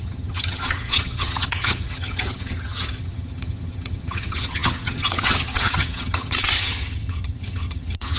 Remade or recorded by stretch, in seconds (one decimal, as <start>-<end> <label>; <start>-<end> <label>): 0.0-8.2 remade